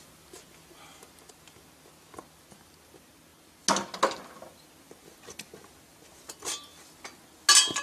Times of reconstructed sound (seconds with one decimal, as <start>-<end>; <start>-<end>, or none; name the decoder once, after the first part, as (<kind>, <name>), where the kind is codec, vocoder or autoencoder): none